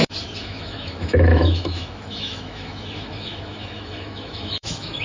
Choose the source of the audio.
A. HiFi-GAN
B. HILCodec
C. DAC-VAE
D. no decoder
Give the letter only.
C